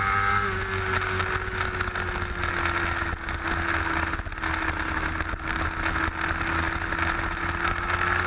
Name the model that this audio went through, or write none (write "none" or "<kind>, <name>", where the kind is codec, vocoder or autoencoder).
none